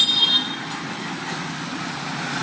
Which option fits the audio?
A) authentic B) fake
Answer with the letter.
A